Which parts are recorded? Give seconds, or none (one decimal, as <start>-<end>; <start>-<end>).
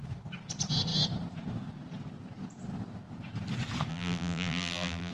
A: 0.0-3.9